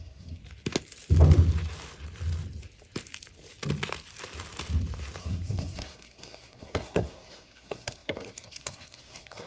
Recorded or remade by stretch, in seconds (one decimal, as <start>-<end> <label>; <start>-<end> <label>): 0.0-0.4 remade; 0.4-5.2 recorded; 5.2-9.5 remade